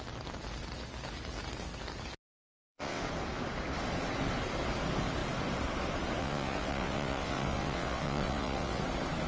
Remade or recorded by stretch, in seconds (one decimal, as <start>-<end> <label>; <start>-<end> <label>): 0.0-2.5 recorded; 2.5-3.0 remade; 3.0-6.2 recorded; 6.2-8.8 remade; 8.8-9.3 recorded